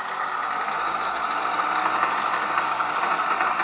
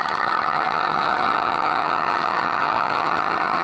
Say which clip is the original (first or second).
first